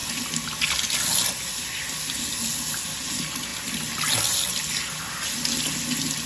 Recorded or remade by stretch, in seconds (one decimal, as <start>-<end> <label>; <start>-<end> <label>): 0.0-6.3 recorded